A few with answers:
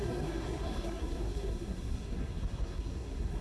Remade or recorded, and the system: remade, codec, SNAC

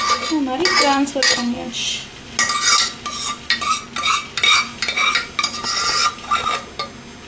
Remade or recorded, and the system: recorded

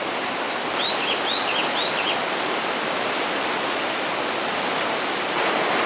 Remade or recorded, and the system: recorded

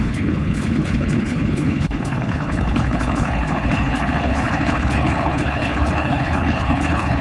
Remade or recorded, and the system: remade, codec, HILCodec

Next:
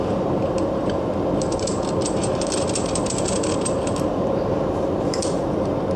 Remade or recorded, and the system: remade, vocoder, BigVGAN v2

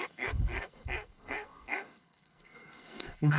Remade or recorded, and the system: remade, codec, SNAC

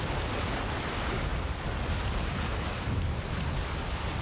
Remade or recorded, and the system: recorded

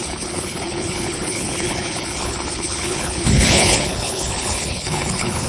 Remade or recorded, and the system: remade, codec, HILCodec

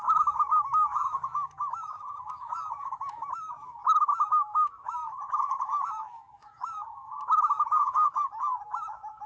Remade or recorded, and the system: remade, autoencoder, DAC-VAE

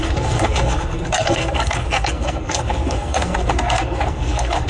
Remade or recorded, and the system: remade, codec, SNAC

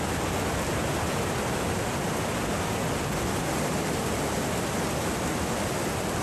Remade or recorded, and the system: recorded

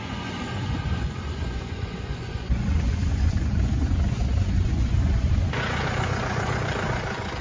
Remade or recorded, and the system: remade, vocoder, Vocos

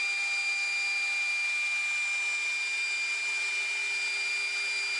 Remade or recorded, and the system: recorded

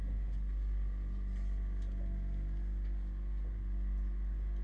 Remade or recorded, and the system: recorded